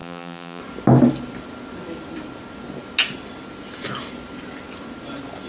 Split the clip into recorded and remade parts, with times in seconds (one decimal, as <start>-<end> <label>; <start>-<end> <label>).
0.0-0.6 remade; 0.6-5.5 recorded